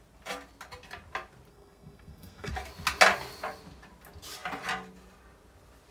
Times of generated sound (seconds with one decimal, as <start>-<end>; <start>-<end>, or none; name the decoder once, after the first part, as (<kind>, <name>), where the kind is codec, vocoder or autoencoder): 1.5-2.5 (codec, SNAC)